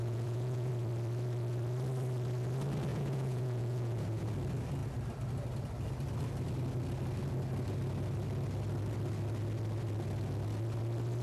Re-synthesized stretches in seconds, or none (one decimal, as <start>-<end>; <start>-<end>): 0.0-0.7; 2.9-4.3